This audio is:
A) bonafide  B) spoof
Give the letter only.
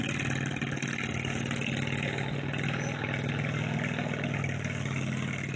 A